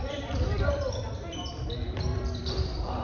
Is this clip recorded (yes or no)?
no